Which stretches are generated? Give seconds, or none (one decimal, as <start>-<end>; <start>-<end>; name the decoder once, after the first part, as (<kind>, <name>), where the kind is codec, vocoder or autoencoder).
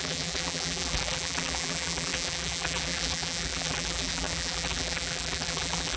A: 0.0-6.0 (vocoder, BigVGAN v2)